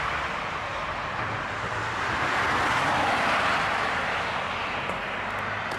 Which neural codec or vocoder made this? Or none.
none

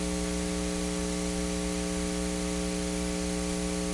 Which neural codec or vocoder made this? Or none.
none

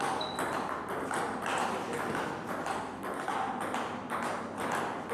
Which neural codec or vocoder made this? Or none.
none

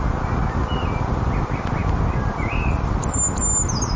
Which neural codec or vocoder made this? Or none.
none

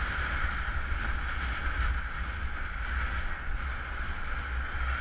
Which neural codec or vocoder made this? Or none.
none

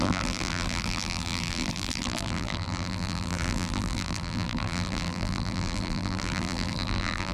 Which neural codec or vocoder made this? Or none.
vocoder, BigVGAN v2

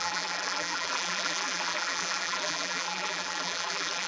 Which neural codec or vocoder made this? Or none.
vocoder, BigVGAN v2